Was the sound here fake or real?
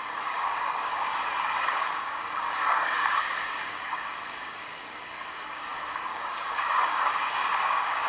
fake